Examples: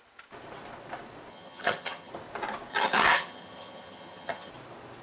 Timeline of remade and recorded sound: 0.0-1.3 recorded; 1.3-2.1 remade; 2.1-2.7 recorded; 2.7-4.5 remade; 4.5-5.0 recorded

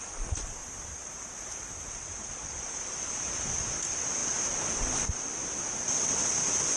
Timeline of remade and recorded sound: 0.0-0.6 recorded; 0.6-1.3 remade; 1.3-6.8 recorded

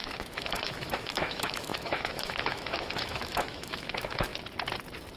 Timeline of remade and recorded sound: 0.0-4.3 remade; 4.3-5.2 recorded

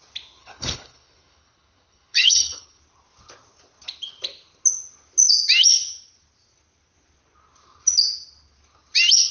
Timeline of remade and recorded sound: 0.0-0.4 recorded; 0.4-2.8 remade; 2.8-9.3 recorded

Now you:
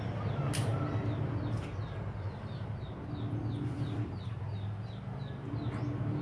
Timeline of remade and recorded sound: 0.0-6.2 recorded